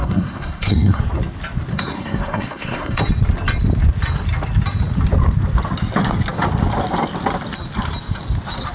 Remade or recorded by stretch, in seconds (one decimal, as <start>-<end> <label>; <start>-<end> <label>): 0.0-1.0 remade; 1.0-1.7 recorded; 1.7-3.0 remade; 3.0-8.7 recorded